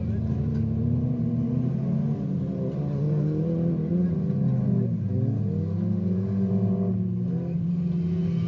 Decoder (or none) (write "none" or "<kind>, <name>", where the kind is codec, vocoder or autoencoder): none